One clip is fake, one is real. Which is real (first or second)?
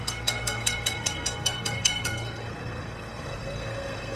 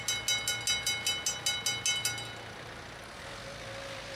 second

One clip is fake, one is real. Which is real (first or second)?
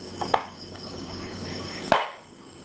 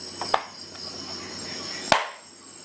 second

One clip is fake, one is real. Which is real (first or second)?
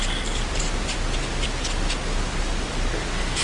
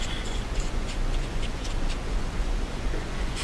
first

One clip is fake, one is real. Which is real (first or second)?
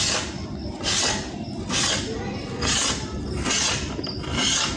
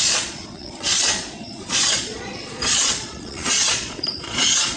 first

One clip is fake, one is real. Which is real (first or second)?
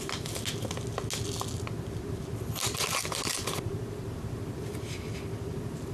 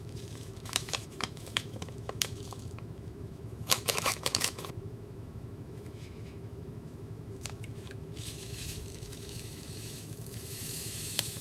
first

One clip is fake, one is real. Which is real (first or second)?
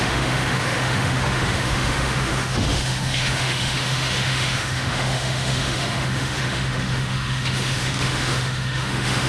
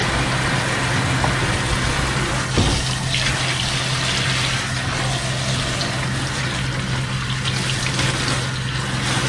second